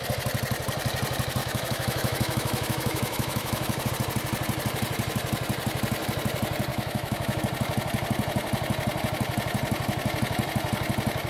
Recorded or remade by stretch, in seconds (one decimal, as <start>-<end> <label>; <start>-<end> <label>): 0.0-1.4 recorded; 1.4-3.9 remade; 3.9-6.7 recorded; 6.7-7.4 remade; 7.4-11.3 recorded